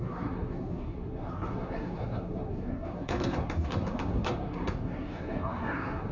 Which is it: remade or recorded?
remade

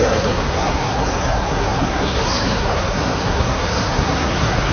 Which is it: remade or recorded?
remade